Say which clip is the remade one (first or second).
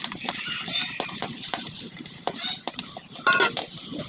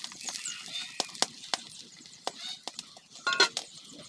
first